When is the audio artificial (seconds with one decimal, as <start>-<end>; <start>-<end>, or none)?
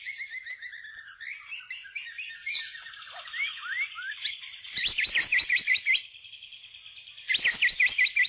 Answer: 2.4-6.3